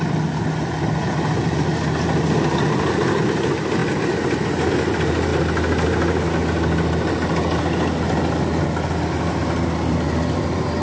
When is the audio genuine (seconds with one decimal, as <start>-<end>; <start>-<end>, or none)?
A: 0.0-10.8